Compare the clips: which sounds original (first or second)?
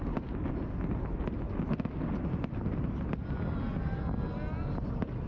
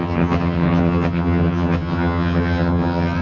first